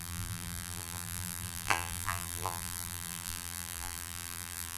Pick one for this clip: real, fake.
fake